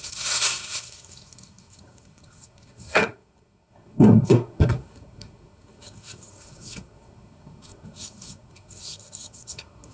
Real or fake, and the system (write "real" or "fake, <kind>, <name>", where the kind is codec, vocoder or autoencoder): fake, codec, SNAC